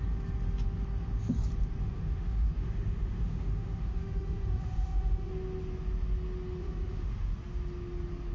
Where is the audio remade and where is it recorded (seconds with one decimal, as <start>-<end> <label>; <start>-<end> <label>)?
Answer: 0.0-1.8 recorded; 1.8-5.3 remade; 5.3-6.6 recorded; 6.6-7.3 remade; 7.3-8.3 recorded